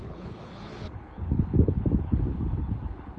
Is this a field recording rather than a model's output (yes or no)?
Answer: no